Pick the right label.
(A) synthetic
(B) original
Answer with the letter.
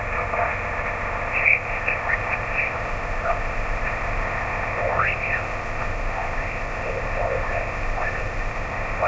A